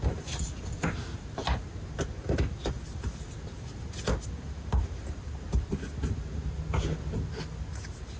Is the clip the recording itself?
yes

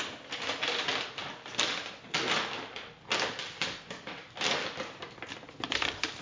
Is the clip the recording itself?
yes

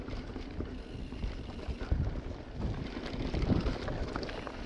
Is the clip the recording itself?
no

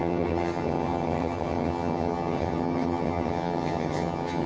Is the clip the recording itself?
no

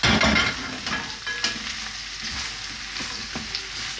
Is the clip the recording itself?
yes